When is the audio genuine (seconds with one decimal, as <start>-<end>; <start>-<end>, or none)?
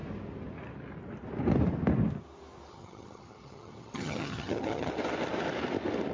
0.0-2.7; 4.9-6.1